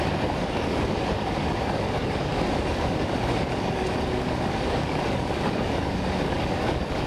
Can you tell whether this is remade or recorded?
remade